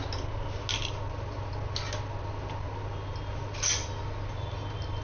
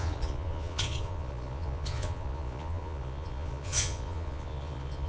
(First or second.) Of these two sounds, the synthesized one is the second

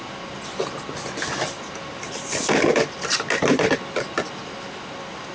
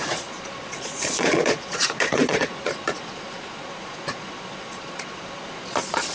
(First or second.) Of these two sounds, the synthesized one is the second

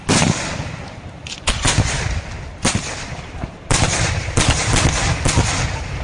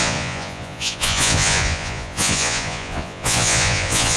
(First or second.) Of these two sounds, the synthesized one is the second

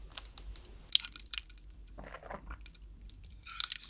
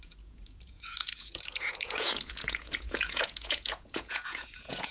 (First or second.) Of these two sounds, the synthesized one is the second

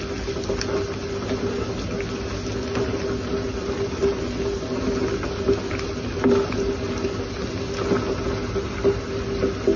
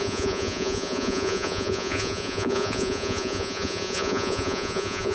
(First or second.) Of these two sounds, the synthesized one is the second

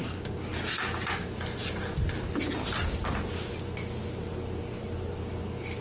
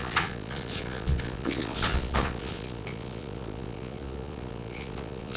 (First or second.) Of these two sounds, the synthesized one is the second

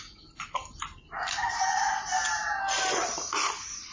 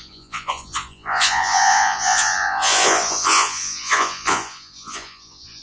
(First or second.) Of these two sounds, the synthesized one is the second